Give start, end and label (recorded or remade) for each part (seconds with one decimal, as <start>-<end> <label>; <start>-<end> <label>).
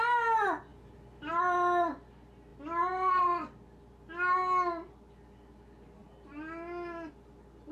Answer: 0.0-7.7 recorded